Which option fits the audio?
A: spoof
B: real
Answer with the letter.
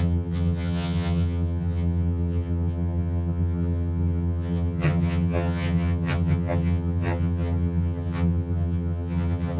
A